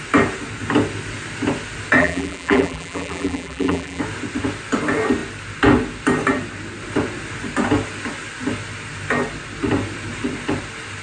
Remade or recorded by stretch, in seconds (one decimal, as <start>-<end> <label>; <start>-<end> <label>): 0.0-2.0 recorded; 2.0-4.0 remade; 4.0-11.0 recorded